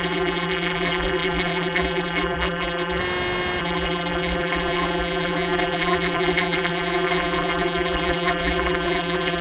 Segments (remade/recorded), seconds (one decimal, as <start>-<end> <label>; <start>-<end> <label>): 0.0-3.0 remade; 3.0-3.6 recorded; 3.6-9.4 remade